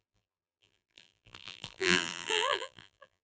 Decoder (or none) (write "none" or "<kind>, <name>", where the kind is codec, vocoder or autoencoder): vocoder, BigVGAN v2